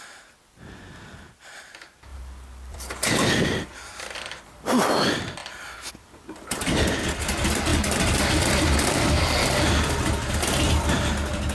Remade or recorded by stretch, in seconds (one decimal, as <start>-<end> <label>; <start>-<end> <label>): 0.0-2.1 recorded; 2.1-4.7 remade; 4.7-7.7 recorded; 7.7-9.8 remade; 9.8-11.5 recorded

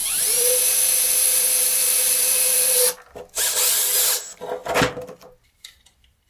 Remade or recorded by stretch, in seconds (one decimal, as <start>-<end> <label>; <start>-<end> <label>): 0.0-3.8 remade; 3.8-4.6 recorded; 4.6-6.3 remade